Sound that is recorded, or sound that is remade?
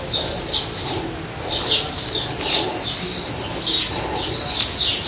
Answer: recorded